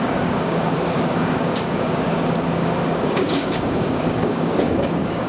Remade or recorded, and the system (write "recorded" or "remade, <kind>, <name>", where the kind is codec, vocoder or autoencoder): remade, codec, DAC